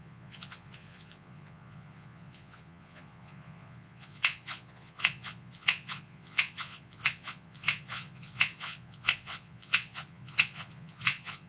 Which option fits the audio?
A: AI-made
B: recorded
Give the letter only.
A